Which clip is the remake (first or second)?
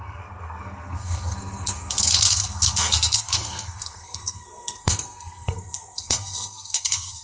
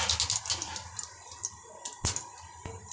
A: first